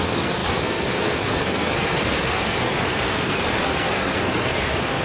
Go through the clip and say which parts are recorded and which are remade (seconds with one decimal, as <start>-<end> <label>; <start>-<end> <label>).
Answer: 0.0-5.0 remade